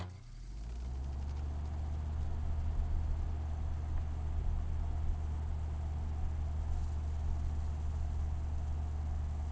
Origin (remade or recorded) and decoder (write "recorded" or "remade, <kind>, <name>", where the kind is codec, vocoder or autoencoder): recorded